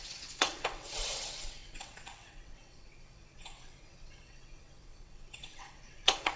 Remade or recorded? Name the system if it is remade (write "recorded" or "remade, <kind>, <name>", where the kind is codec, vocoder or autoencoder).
remade, vocoder, WaveNeXt